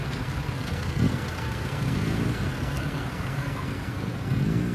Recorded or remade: remade